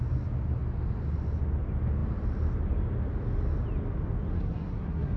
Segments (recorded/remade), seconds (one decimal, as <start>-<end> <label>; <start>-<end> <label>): 0.0-4.3 recorded; 4.3-5.2 remade

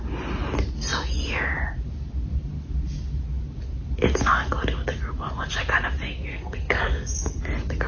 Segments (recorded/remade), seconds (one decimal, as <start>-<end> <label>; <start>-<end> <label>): 0.0-6.3 recorded; 6.3-7.4 remade; 7.4-7.9 recorded

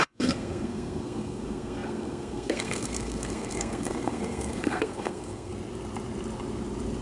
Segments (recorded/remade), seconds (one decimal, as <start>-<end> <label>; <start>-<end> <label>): 0.0-5.5 remade; 5.5-7.0 recorded

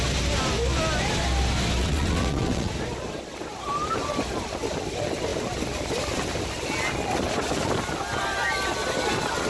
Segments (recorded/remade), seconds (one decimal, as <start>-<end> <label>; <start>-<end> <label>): 0.0-1.8 recorded; 1.8-2.7 remade; 2.7-9.5 recorded